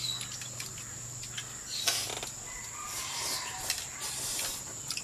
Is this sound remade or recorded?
recorded